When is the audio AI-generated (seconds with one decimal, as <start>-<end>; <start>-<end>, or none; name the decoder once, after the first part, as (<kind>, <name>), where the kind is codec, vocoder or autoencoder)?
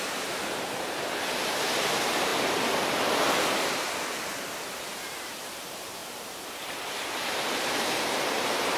0.0-2.3 (vocoder, BigVGAN v2); 3.3-8.8